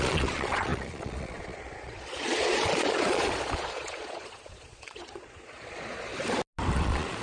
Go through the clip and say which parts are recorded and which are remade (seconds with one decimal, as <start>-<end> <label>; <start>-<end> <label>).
0.0-6.1 remade; 6.1-6.7 recorded; 6.7-7.2 remade